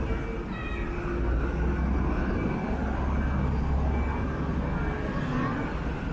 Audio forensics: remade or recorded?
recorded